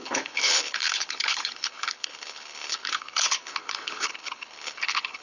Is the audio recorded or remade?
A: remade